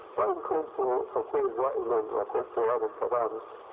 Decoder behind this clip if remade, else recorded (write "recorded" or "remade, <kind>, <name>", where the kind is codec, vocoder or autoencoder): recorded